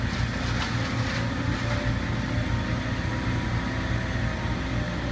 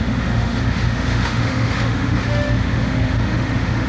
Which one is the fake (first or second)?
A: second